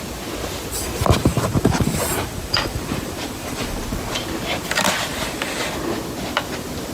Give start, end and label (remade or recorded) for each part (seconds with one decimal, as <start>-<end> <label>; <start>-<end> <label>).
0.0-1.3 recorded; 1.3-3.8 remade; 3.8-5.1 recorded; 5.1-5.6 remade; 5.6-6.9 recorded